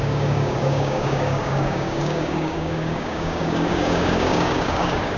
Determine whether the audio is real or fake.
fake